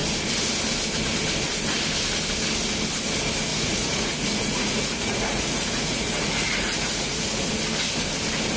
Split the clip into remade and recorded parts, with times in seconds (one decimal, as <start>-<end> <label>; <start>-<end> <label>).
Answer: 0.0-3.5 recorded; 3.5-7.5 remade; 7.5-8.6 recorded